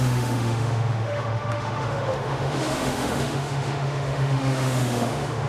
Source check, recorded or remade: remade